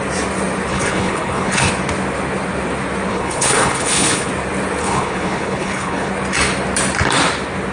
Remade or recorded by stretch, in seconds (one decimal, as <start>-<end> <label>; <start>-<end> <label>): 0.0-0.7 recorded; 0.7-1.7 remade; 1.7-3.1 recorded; 3.1-4.3 remade; 4.3-4.8 recorded; 4.8-6.1 remade; 6.1-7.7 recorded